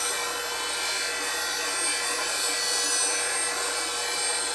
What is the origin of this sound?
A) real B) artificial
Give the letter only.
A